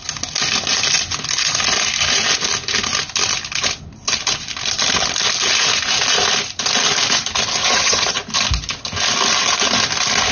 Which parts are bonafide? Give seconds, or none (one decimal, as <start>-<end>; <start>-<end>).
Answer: 0.0-7.6; 8.2-10.3